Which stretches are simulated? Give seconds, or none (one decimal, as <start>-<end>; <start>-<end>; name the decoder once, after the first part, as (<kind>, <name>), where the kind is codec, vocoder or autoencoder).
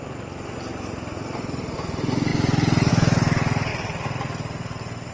none